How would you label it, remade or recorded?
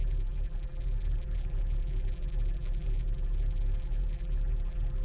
remade